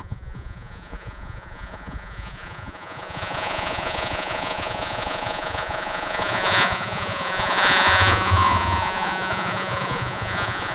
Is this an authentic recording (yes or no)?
no